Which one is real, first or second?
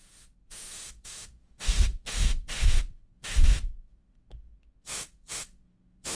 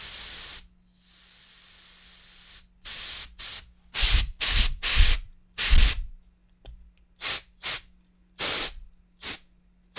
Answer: second